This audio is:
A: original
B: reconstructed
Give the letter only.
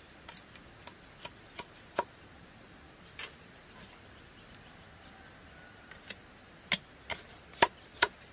A